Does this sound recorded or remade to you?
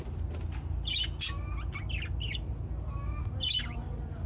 recorded